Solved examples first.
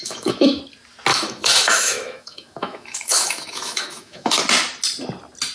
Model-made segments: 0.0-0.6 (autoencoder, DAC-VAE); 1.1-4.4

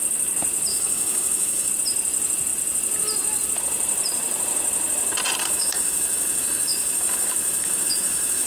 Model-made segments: 0.7-1.7 (autoencoder, DAC-VAE); 5.4-8.5

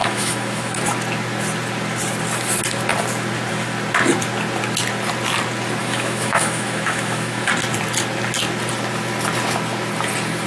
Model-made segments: 0.0-0.8 (autoencoder, DAC-VAE); 5.8-7.5

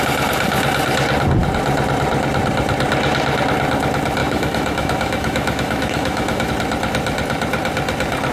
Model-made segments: 4.2-6.5 (autoencoder, DAC-VAE)